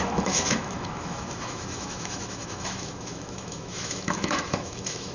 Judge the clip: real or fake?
fake